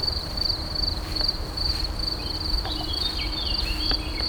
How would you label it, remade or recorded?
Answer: remade